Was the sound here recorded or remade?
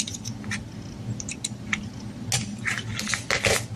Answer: recorded